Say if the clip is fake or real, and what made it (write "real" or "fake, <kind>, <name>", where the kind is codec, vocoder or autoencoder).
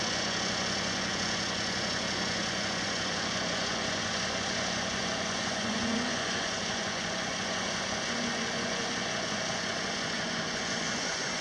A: fake, vocoder, Vocos